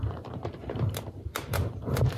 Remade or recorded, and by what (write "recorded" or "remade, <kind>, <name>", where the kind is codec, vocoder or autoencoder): remade, vocoder, BigVGAN v2